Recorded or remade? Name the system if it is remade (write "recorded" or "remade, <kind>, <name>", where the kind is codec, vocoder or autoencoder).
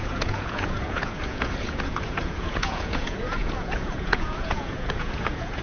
remade, vocoder, Vocos